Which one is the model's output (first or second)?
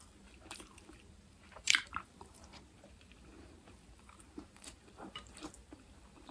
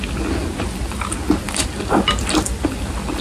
first